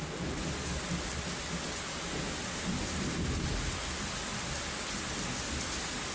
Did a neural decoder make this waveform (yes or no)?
no